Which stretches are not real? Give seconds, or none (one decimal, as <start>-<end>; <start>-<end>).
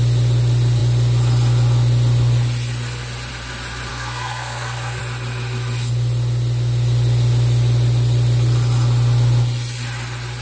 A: 3.9-5.0